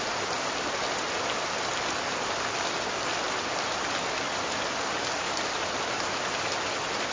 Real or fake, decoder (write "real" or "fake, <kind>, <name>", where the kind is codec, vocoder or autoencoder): real